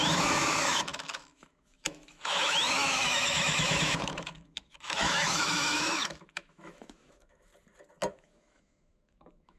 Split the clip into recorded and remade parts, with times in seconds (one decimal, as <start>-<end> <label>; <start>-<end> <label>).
0.0-7.5 remade; 7.5-8.1 recorded; 8.1-9.6 remade